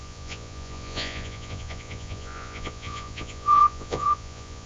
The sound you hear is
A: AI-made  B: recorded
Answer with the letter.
A